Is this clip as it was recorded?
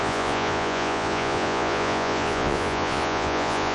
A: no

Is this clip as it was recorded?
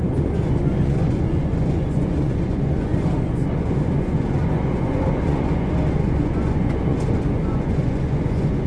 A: no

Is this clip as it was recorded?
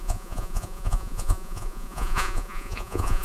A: no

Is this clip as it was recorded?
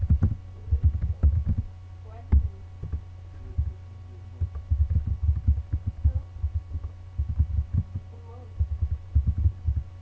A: yes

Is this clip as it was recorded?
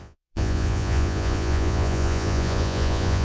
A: no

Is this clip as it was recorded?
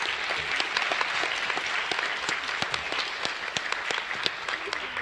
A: yes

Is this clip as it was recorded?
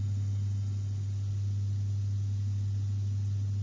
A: yes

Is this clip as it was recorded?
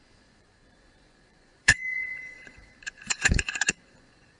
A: no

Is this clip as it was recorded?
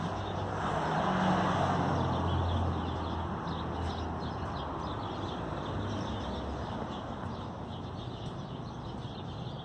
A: yes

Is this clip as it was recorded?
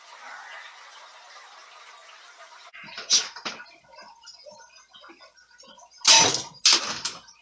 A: yes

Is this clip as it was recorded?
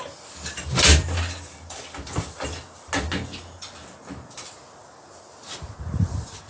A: yes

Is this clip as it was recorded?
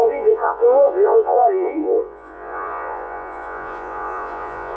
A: no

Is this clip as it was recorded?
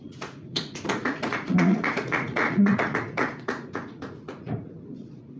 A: no